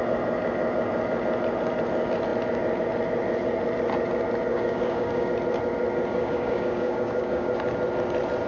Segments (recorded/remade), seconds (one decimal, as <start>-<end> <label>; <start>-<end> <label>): 0.0-4.5 recorded; 4.5-5.3 remade; 5.3-6.1 recorded; 6.1-7.5 remade; 7.5-8.5 recorded